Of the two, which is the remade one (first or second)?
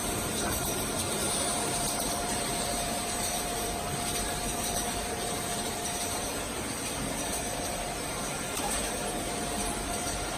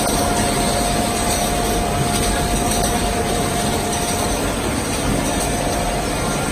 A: first